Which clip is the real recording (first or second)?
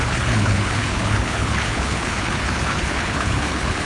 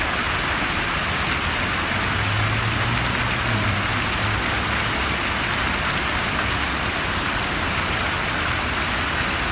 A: second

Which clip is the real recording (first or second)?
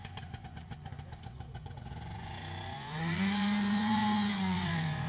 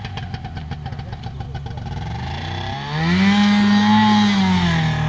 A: second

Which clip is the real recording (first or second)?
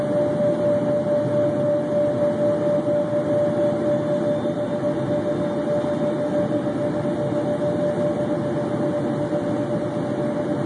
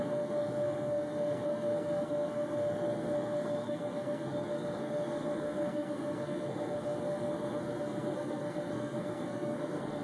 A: first